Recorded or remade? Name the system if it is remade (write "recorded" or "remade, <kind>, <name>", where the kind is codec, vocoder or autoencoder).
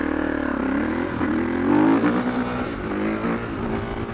recorded